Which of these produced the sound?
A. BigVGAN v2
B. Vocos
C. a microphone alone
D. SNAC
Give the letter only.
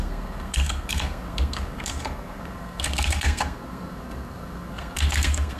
D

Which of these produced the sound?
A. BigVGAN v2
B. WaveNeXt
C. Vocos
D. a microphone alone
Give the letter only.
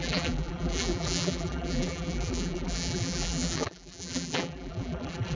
A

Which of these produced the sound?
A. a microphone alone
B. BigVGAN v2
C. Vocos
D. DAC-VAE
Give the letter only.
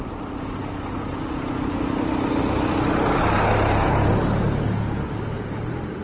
A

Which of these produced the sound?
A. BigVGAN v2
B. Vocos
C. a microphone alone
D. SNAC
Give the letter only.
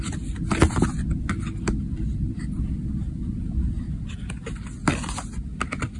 C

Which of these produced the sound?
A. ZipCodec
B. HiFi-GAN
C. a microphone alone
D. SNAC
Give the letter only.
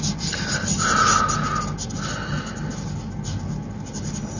C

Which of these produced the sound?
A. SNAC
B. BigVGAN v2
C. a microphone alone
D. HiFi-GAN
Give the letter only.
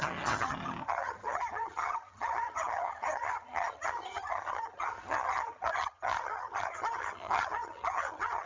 D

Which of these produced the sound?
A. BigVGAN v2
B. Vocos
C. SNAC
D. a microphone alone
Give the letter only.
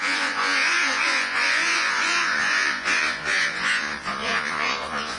B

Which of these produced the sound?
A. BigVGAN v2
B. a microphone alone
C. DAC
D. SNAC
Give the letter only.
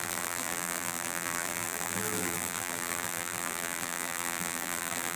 A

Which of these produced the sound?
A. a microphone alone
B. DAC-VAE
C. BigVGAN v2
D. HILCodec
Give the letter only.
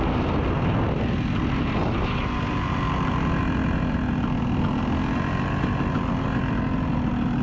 A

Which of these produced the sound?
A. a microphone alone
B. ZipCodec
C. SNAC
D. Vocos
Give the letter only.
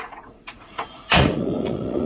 D